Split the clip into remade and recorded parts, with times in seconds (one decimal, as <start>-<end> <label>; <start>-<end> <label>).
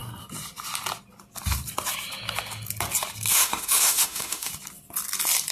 0.0-3.3 recorded; 3.3-4.5 remade; 4.5-5.5 recorded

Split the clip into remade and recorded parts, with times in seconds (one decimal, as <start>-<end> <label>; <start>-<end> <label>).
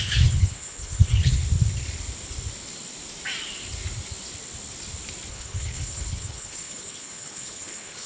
0.0-1.4 remade; 1.4-5.3 recorded; 5.3-8.1 remade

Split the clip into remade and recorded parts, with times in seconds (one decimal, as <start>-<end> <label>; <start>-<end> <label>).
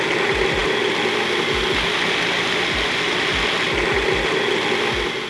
0.0-5.3 recorded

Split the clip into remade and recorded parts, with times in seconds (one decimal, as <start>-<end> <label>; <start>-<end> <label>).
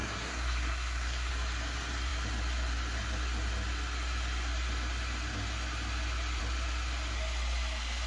0.0-1.3 remade; 1.3-8.1 recorded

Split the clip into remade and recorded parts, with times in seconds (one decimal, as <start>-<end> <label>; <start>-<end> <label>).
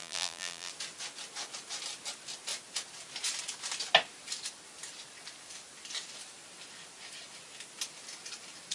0.0-0.7 remade; 0.7-8.7 recorded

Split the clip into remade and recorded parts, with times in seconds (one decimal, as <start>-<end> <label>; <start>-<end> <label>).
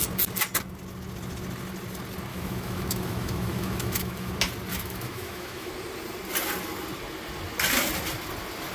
0.0-2.3 recorded; 2.3-4.3 remade; 4.3-4.7 recorded; 4.7-5.7 remade; 5.7-8.7 recorded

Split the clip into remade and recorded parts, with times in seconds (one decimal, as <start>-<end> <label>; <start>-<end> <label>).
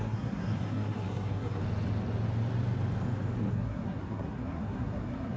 0.0-1.6 remade; 1.6-3.5 recorded; 3.5-5.4 remade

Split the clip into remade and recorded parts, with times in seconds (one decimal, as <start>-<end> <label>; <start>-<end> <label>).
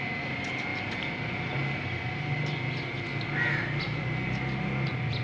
0.0-5.2 recorded